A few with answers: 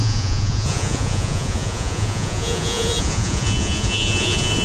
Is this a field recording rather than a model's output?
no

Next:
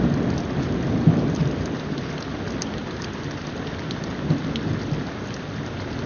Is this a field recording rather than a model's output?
yes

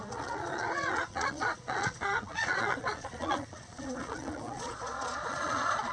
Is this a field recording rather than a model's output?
no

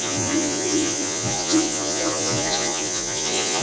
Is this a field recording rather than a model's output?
no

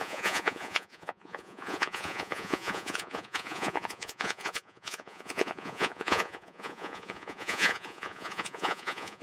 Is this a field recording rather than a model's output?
no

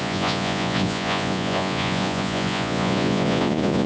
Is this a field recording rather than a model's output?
no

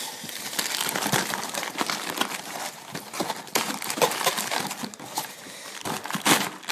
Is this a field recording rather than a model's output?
yes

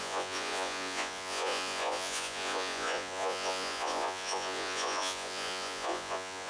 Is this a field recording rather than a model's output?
no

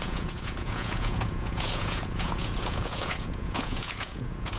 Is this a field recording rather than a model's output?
no